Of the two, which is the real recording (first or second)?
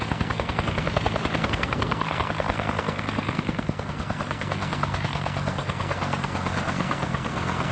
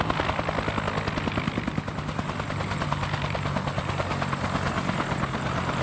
second